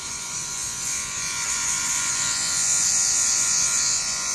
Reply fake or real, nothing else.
fake